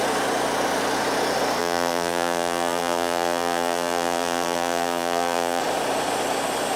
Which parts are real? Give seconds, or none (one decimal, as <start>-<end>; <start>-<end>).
0.0-1.6; 5.6-6.8